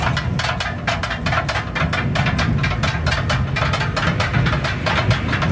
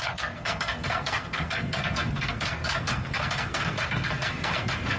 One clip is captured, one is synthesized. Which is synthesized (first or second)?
second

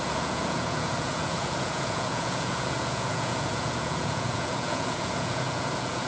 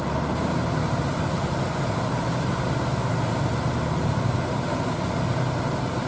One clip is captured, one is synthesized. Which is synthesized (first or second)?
first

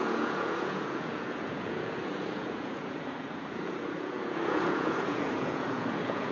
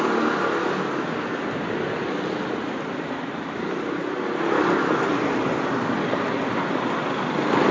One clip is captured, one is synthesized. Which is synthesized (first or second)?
first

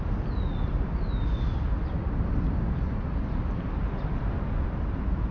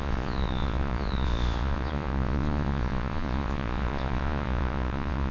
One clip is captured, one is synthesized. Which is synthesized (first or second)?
second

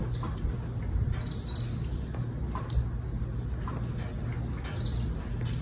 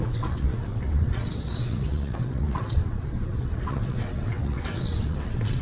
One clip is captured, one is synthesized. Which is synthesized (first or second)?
second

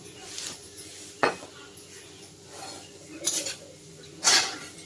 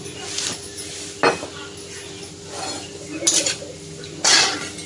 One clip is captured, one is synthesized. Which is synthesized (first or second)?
first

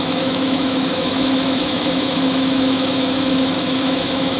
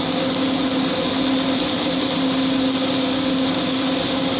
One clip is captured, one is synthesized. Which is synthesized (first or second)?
first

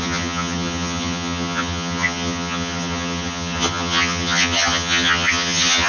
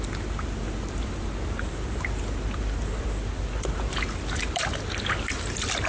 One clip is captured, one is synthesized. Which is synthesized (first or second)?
first